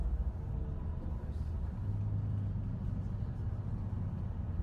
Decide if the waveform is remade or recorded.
recorded